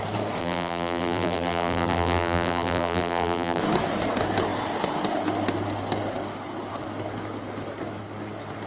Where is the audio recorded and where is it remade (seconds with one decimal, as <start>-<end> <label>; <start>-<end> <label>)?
0.0-0.4 recorded; 0.4-3.6 remade; 3.6-8.7 recorded